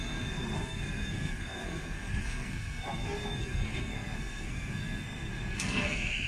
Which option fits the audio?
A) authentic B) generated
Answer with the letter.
B